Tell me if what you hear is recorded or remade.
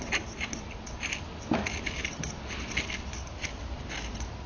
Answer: recorded